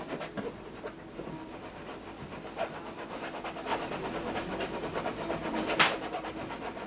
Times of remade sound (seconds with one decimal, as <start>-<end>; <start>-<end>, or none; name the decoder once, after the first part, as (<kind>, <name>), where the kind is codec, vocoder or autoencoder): none